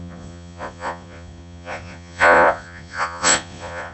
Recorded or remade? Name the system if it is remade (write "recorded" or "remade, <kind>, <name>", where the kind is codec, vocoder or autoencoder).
remade, vocoder, Vocos